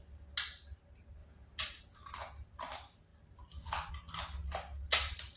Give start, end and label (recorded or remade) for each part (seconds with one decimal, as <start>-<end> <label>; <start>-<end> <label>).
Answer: 0.0-3.1 recorded; 3.1-3.9 remade; 3.9-5.4 recorded